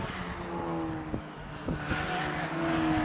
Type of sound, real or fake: real